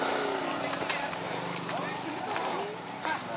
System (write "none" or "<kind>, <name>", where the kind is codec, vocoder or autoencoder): none